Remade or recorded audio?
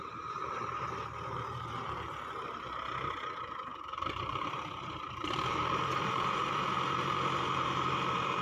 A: remade